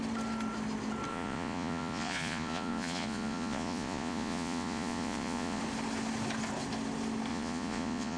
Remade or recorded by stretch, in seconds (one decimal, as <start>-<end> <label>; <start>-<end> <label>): 0.0-1.1 recorded; 1.1-5.6 remade; 5.6-7.3 recorded; 7.3-8.2 remade